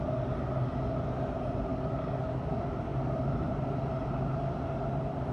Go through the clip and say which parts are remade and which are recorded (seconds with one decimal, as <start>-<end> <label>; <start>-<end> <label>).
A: 0.0-1.7 recorded; 1.7-2.5 remade; 2.5-5.3 recorded